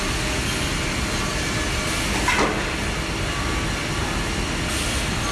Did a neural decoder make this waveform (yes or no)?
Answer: no